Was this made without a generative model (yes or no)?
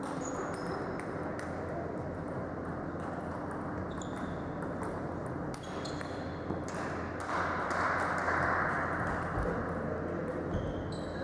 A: yes